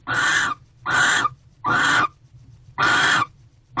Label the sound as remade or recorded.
remade